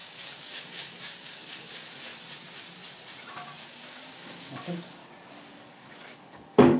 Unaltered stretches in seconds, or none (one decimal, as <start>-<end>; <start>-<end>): 2.1-3.6; 5.0-5.5